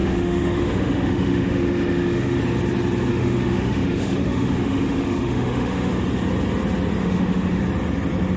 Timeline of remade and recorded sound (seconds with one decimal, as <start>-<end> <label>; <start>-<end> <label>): 0.0-2.4 remade; 2.4-3.1 recorded; 3.1-5.9 remade; 5.9-7.0 recorded; 7.0-7.6 remade; 7.6-8.4 recorded